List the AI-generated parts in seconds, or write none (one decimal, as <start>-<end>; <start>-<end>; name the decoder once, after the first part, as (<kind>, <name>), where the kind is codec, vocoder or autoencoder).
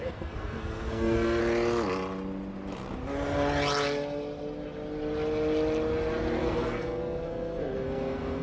0.0-1.4 (codec, SNAC); 6.4-8.4